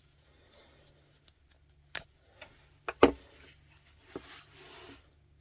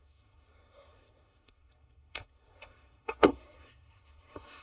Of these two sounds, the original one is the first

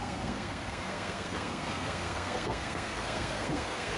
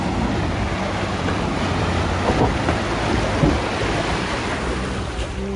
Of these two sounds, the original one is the second